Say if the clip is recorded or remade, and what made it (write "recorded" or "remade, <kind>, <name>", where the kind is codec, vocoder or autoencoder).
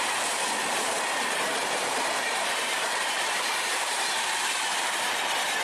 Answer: remade, vocoder, BigVGAN v2